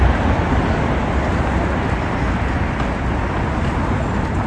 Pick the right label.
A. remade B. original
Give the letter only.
B